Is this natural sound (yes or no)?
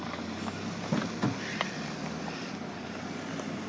yes